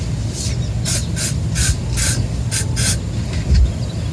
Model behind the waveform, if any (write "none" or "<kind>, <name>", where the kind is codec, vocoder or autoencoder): none